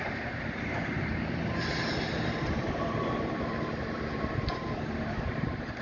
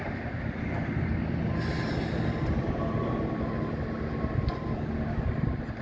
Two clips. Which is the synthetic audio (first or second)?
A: first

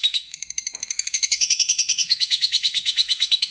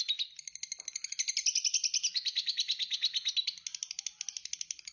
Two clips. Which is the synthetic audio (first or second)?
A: first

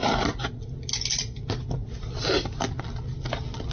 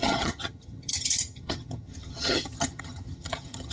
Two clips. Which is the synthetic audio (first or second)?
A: second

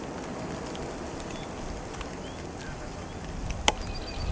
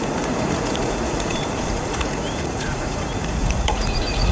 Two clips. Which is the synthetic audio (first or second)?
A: second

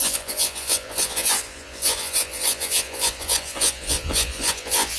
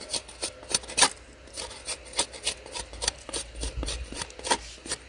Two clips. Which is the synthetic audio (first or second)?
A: first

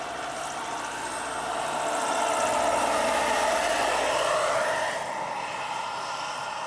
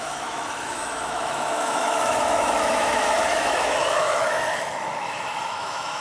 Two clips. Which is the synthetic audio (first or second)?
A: second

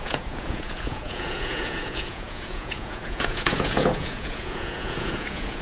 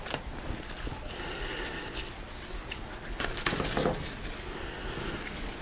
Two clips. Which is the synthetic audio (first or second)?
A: first